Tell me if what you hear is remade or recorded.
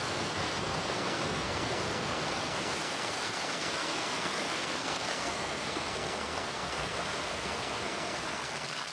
remade